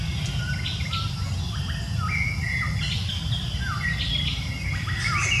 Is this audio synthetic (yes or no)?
no